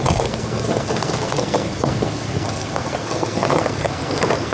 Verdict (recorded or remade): remade